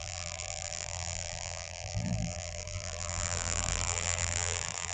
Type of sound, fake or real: fake